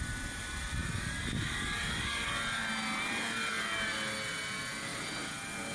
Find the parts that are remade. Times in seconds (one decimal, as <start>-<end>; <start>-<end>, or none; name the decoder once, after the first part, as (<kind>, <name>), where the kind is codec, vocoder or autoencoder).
0.8-2.3 (codec, DAC)